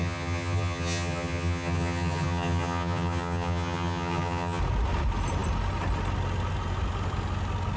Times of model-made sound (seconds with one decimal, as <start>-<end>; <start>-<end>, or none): 0.0-4.6